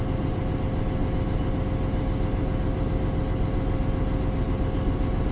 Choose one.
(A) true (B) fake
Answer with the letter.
A